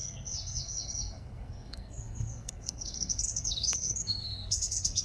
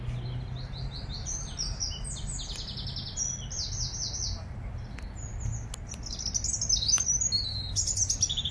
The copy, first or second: first